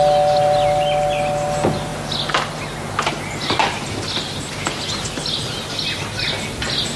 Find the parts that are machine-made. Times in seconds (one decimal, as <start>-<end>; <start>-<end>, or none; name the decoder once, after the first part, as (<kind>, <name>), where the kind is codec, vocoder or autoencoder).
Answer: none